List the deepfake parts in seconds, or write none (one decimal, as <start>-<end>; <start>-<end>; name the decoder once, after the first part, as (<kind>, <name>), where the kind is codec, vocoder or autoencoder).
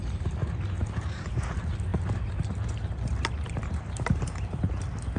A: none